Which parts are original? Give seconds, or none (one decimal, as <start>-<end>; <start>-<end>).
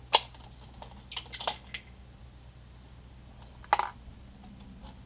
0.0-5.1